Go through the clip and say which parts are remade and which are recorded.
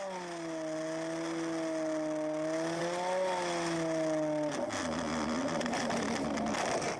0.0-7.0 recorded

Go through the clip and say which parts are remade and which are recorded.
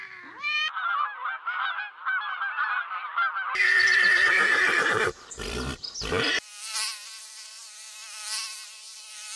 0.0-0.7 remade; 0.7-2.0 recorded; 2.0-9.4 remade